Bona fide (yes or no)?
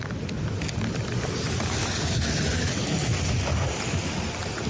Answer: yes